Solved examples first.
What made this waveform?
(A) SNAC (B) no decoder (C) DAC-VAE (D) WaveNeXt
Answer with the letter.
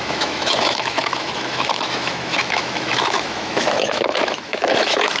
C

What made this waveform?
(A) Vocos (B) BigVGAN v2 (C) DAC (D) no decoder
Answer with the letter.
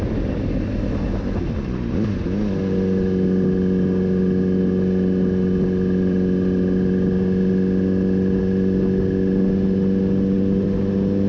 D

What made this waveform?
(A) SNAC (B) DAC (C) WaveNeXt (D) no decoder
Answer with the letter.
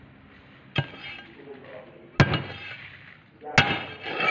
D